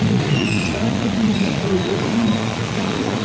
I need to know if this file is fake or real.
fake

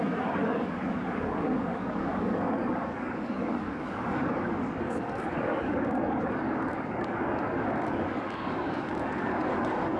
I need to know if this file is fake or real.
fake